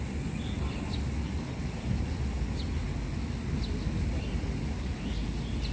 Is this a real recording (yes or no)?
yes